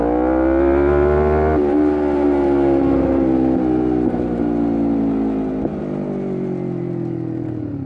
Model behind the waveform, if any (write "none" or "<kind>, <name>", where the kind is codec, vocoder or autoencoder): none